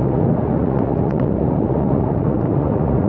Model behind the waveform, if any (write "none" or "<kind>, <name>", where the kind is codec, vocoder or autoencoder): vocoder, Vocos